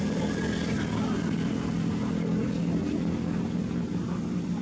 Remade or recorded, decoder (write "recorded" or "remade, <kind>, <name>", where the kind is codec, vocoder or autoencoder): recorded